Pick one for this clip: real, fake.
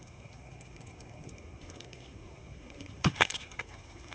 fake